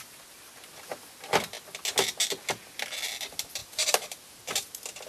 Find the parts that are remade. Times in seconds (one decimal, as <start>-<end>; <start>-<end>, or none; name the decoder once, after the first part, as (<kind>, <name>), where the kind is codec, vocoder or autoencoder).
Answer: 3.6-4.4 (vocoder, BigVGAN v2)